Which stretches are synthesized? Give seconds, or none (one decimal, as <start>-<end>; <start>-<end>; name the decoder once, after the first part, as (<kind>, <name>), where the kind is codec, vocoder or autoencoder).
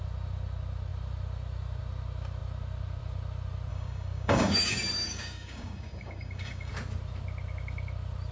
3.7-6.7 (codec, DAC)